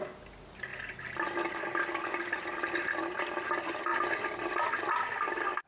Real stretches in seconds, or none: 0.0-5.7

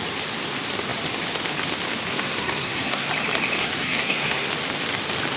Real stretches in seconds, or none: 0.0-2.1; 3.1-3.6; 4.5-5.4

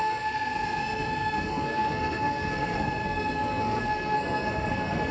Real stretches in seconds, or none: none

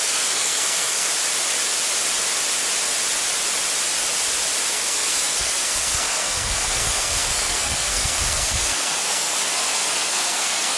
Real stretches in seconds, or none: 1.1-4.7

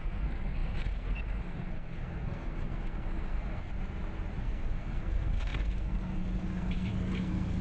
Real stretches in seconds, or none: 3.7-4.4

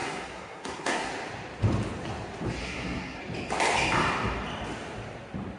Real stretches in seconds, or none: 1.1-2.6; 3.2-5.6